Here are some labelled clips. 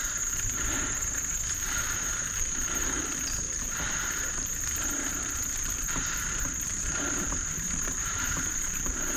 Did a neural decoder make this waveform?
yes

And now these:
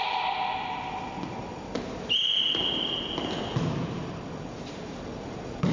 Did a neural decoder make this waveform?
no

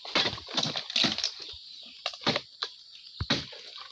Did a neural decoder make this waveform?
no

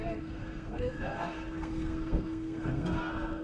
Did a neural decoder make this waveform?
yes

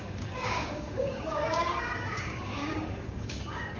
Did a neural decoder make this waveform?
yes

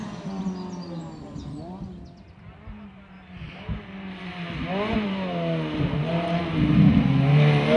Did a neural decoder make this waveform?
no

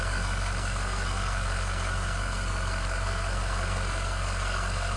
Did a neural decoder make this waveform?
yes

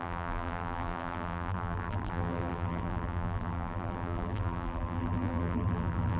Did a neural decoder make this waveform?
yes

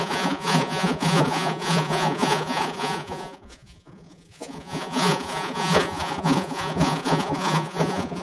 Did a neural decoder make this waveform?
yes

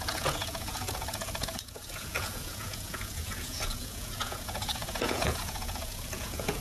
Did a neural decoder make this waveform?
yes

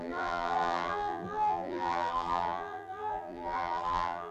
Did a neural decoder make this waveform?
yes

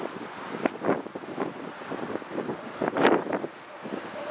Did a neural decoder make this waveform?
no